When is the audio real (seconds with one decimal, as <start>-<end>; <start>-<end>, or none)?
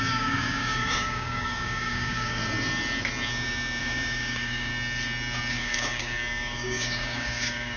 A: 2.4-3.8; 4.7-5.5